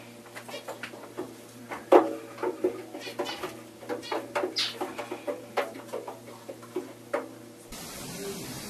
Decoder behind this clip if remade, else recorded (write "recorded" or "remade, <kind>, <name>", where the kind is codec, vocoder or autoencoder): recorded